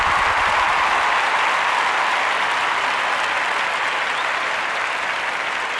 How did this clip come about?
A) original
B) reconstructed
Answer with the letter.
A